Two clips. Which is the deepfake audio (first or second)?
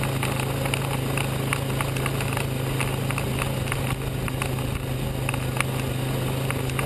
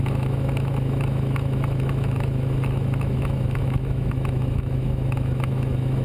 second